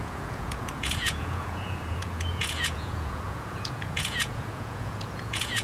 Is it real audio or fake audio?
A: fake